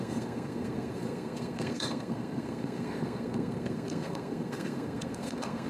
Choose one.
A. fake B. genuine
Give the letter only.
A